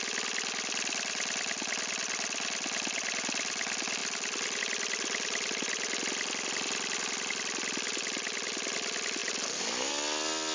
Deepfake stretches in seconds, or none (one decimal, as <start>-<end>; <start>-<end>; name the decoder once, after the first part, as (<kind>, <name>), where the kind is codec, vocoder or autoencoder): 9.2-9.9 (vocoder, BigVGAN v2)